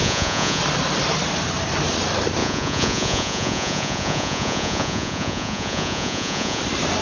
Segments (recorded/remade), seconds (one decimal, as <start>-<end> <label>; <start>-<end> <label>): 0.0-0.6 remade; 0.6-2.4 recorded; 2.4-6.6 remade; 6.6-7.0 recorded